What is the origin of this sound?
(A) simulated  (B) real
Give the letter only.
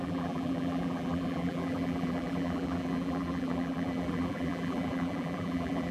A